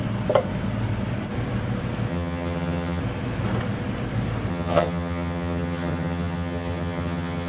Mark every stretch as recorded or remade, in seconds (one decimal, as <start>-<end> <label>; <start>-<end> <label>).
0.0-2.1 recorded; 2.1-3.0 remade; 3.0-4.5 recorded; 4.5-7.5 remade